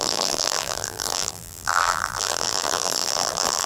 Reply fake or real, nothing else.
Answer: fake